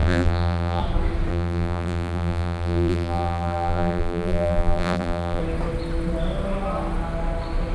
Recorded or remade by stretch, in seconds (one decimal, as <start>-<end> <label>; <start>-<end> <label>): 0.0-0.8 remade; 0.8-1.3 recorded; 1.3-5.4 remade; 5.4-7.7 recorded